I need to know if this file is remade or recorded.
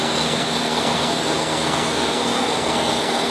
remade